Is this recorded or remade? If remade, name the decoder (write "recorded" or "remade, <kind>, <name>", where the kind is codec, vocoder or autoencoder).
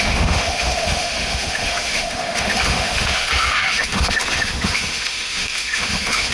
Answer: remade, autoencoder, DAC-VAE